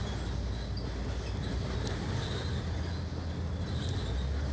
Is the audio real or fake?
real